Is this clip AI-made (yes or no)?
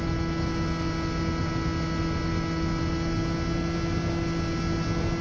no